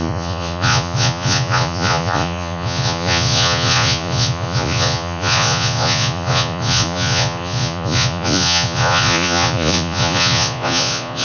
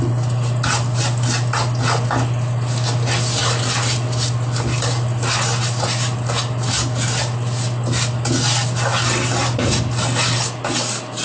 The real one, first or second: second